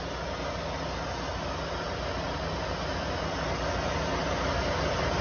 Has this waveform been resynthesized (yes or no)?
no